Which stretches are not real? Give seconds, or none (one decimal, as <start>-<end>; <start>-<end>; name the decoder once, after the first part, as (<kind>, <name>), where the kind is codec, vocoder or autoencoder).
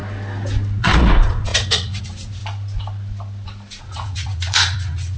0.8-2.4 (vocoder, Vocos); 3.8-5.2